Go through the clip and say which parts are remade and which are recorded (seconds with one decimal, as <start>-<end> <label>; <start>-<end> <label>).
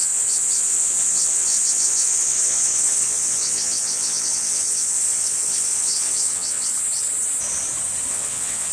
0.0-6.7 remade; 6.7-8.1 recorded; 8.1-8.7 remade